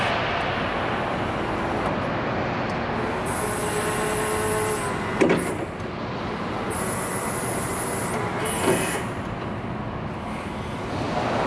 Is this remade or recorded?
recorded